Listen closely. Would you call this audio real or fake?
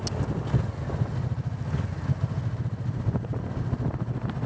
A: real